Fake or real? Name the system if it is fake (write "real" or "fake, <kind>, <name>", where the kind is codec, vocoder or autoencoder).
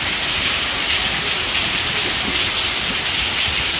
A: real